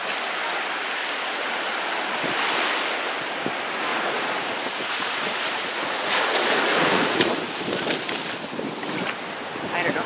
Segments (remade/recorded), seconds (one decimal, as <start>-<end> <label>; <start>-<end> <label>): 0.0-3.9 recorded; 3.9-7.3 remade; 7.3-10.1 recorded